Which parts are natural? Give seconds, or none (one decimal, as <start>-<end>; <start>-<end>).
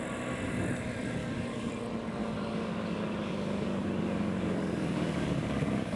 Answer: 0.0-1.2; 1.7-2.2